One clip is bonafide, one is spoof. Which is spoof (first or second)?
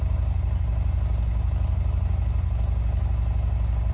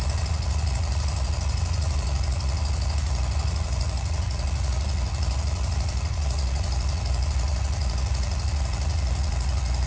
second